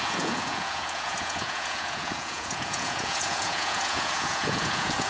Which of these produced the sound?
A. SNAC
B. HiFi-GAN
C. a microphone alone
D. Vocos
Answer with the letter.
D